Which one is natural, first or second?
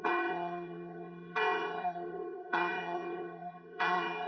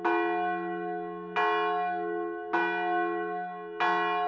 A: second